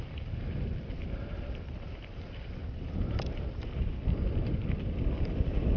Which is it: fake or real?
real